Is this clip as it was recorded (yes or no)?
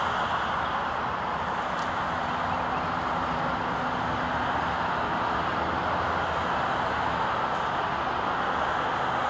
yes